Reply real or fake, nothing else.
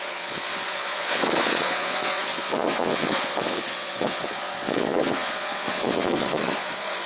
fake